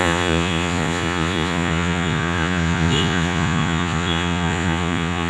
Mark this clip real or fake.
fake